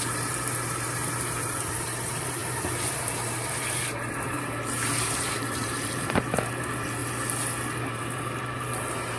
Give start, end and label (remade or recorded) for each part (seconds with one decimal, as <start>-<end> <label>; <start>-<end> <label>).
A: 0.0-7.0 remade; 7.0-7.8 recorded; 7.8-9.2 remade